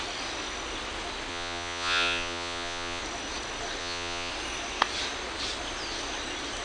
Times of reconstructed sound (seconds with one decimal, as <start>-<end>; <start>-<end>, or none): 1.3-3.0; 3.8-4.3